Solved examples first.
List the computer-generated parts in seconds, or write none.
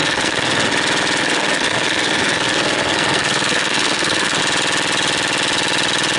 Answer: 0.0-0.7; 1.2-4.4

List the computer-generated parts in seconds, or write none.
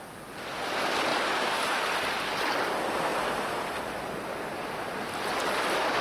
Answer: 3.1-4.7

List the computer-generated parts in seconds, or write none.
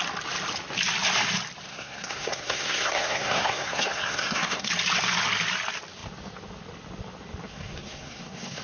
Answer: 1.7-4.7; 7.5-8.6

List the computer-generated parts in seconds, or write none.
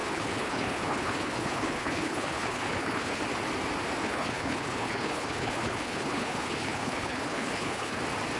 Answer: 0.0-3.2; 4.0-8.0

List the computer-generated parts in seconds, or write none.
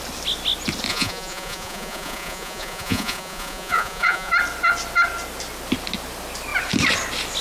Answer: 0.9-4.3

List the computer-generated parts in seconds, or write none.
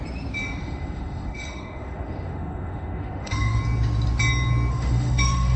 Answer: 0.6-3.6; 4.7-5.6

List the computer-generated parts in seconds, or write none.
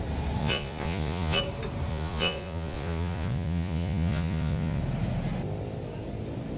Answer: 0.4-1.4; 1.9-4.8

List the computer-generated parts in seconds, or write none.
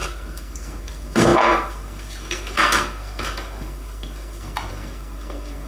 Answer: 0.0-5.7